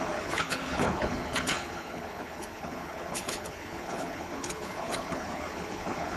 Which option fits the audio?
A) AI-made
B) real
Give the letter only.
A